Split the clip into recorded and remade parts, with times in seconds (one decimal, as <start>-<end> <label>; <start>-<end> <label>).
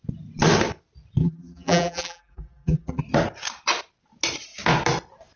0.0-1.2 recorded; 1.2-3.0 remade; 3.0-5.4 recorded